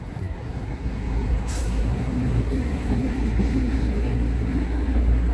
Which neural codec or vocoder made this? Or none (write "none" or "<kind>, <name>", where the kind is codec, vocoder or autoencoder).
codec, SNAC